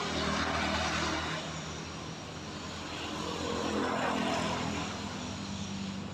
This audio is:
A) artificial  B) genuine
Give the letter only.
B